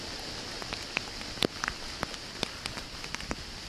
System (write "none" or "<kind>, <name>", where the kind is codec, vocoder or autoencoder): none